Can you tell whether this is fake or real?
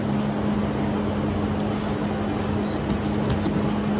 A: real